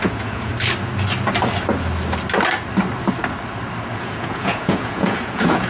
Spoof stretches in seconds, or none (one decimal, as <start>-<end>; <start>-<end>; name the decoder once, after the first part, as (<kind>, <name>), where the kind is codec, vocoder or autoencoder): 0.0-0.5 (vocoder, Vocos); 3.9-5.7